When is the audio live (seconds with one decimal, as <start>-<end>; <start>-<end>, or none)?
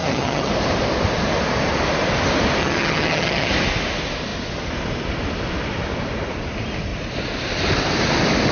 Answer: 0.5-2.6; 3.5-8.5